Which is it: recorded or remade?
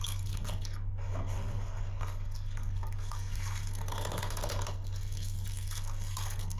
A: remade